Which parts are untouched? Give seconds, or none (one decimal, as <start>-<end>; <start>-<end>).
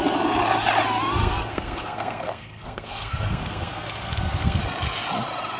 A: 0.0-1.2; 4.6-5.6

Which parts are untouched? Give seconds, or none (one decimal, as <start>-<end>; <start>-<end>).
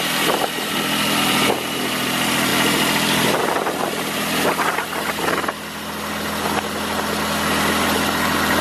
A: 0.0-8.6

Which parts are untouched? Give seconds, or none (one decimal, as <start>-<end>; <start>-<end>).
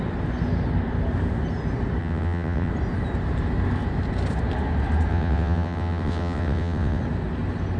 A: 0.0-2.0; 2.7-5.1; 7.0-7.8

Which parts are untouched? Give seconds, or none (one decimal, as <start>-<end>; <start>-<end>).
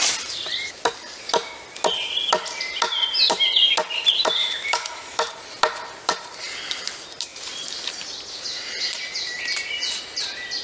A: 0.0-4.4; 5.3-10.6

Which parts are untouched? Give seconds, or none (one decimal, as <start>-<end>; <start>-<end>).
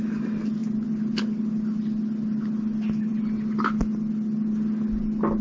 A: 0.0-5.4